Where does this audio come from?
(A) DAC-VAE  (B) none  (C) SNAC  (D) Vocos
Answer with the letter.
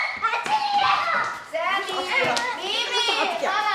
B